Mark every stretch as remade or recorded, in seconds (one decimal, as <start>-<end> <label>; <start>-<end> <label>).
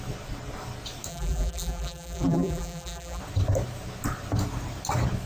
0.0-1.1 recorded; 1.1-3.2 remade; 3.2-5.3 recorded